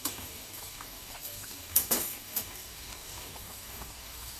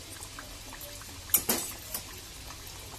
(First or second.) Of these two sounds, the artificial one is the first